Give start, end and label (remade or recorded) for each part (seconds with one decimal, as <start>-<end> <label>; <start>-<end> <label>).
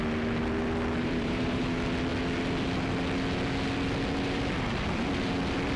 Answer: 0.0-1.0 recorded; 1.0-1.6 remade; 1.6-5.8 recorded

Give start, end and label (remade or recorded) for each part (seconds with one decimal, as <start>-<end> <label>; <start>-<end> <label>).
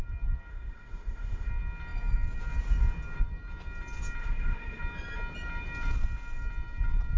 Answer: 0.0-0.5 recorded; 0.5-1.5 remade; 1.5-4.2 recorded; 4.2-4.8 remade; 4.8-7.2 recorded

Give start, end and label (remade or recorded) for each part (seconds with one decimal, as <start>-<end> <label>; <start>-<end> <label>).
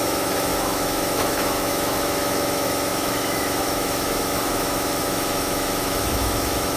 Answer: 0.0-6.8 remade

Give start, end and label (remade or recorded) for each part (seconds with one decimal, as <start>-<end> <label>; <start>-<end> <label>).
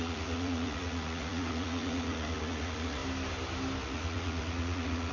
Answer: 0.0-3.0 remade; 3.0-3.8 recorded; 3.8-5.1 remade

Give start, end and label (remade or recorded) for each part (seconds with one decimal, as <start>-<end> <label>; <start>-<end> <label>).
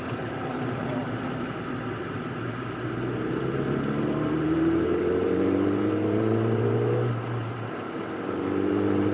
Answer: 0.0-1.0 remade; 1.0-3.4 recorded; 3.4-9.1 remade